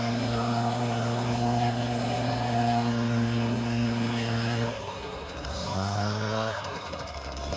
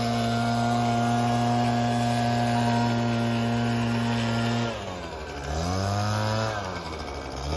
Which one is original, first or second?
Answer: second